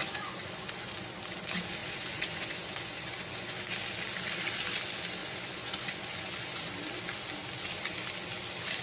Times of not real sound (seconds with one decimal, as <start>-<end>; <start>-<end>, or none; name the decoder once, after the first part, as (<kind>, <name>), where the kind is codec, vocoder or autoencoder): 0.0-0.9 (vocoder, Vocos); 1.8-3.6; 5.2-6.7